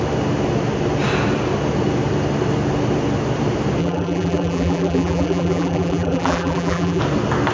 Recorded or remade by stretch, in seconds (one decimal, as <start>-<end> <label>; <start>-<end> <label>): 0.0-3.8 recorded; 3.8-7.0 remade; 7.0-7.5 recorded